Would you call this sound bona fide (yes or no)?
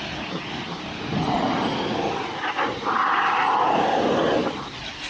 yes